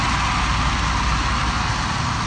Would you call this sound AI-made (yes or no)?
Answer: no